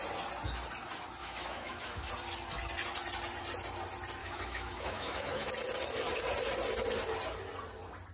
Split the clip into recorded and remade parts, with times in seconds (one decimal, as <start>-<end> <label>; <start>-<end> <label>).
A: 0.0-1.2 recorded; 1.2-2.1 remade; 2.1-4.2 recorded; 4.2-5.5 remade; 5.5-8.1 recorded